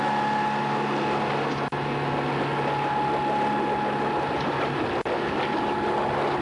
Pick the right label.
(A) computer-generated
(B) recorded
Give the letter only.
B